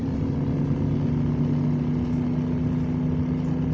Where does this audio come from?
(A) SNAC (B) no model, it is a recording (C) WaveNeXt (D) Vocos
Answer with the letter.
B